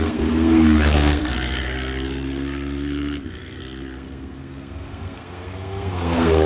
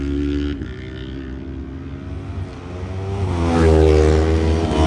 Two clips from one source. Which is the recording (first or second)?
second